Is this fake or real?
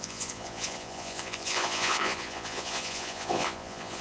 fake